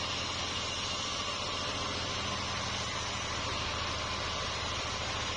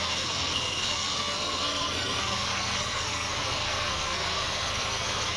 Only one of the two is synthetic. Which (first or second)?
second